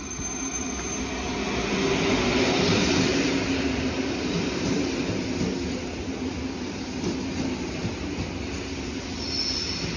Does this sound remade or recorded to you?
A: recorded